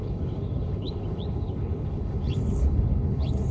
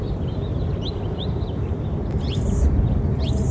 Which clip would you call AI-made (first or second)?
first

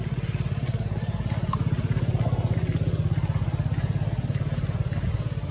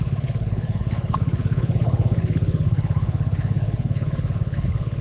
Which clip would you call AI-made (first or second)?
second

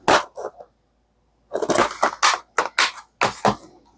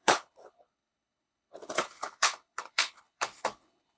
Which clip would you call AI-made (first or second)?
second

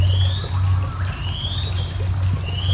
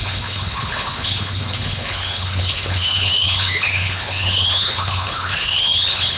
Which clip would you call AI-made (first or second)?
second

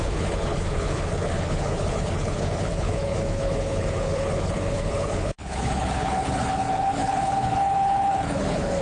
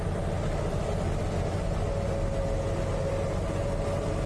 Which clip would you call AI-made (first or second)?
first